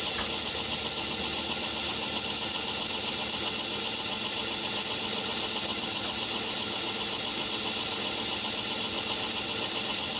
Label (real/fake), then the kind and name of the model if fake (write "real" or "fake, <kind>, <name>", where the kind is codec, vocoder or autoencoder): real